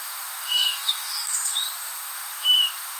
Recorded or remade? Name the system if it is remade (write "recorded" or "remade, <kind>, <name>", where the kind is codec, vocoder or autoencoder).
remade, autoencoder, DAC-VAE